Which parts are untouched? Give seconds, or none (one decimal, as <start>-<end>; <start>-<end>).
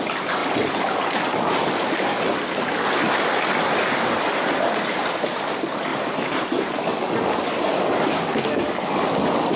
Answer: 0.0-0.4; 1.7-5.9; 6.8-9.6